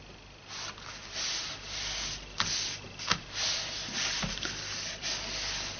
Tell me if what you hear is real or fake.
real